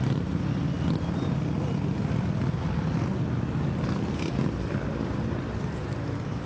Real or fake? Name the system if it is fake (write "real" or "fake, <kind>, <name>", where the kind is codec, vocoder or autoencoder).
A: real